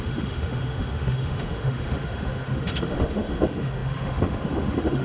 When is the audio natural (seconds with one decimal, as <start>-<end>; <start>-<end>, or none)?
none

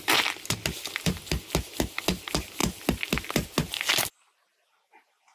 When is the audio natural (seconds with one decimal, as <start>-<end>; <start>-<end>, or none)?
0.0-5.3

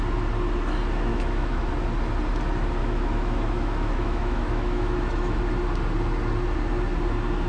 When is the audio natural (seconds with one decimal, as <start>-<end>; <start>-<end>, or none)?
0.0-1.1; 1.7-2.8; 5.4-7.5

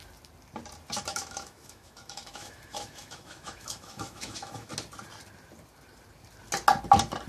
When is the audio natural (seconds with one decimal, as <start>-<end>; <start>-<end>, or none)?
0.0-1.1; 4.7-7.3

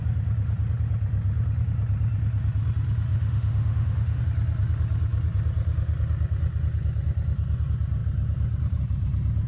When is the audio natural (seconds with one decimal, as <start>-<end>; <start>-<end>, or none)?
0.0-3.1; 4.2-9.5

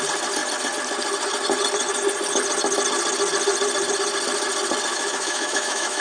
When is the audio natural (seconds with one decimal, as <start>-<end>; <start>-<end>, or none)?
0.0-4.9